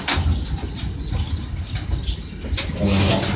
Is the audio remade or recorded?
recorded